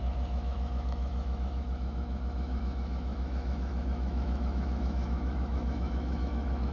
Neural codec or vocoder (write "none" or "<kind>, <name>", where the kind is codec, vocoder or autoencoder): autoencoder, DAC-VAE